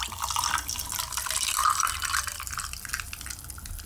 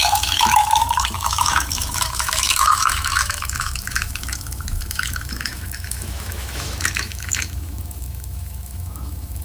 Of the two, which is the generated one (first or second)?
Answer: second